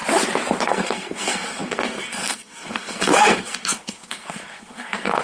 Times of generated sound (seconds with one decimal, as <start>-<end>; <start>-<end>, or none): 0.6-5.2